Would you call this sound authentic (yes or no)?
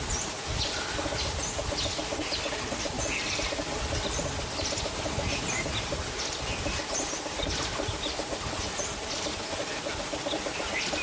yes